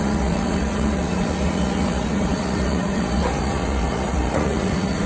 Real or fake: fake